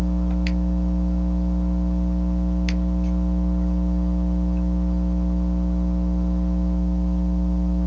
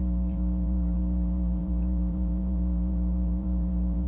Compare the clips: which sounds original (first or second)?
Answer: first